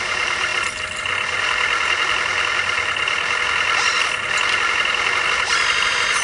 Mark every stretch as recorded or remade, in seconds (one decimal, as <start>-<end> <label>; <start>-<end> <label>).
0.0-6.2 recorded